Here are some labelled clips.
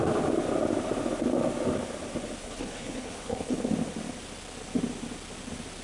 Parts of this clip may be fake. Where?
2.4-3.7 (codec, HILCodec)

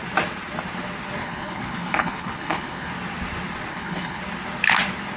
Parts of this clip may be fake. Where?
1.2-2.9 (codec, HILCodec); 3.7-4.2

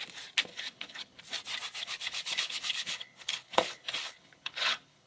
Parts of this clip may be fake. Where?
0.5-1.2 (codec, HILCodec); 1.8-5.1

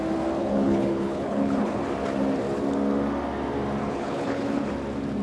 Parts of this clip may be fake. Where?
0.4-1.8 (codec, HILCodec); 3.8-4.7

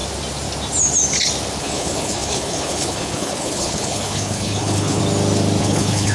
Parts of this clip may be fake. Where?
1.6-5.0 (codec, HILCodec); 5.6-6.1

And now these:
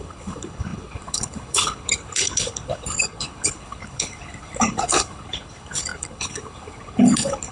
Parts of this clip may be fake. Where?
0.0-7.5 (codec, HILCodec)

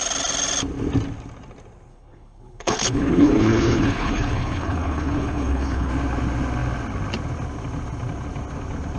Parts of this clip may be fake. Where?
1.9-5.9 (codec, HILCodec)